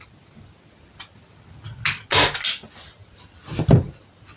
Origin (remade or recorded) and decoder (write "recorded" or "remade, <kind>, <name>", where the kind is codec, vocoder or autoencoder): recorded